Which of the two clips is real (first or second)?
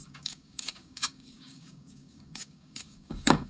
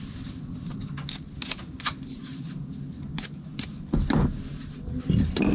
second